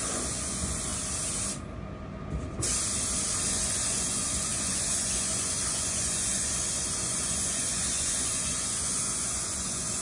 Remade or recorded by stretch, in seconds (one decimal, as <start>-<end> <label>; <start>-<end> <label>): 0.0-0.9 remade; 0.9-3.5 recorded; 3.5-10.0 remade